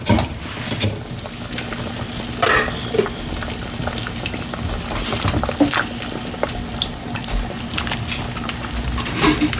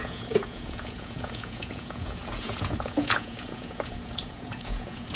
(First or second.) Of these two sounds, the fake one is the second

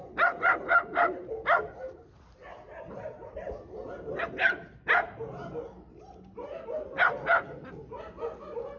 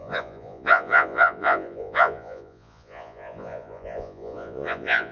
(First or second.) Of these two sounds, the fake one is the second